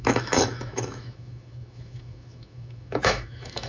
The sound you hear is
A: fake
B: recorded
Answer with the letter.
A